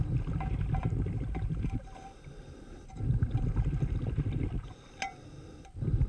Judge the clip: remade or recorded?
recorded